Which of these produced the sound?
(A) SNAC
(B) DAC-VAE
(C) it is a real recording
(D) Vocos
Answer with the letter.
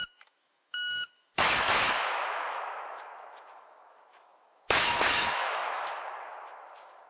B